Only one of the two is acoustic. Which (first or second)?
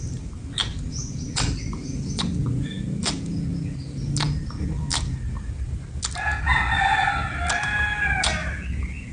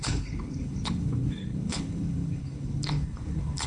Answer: first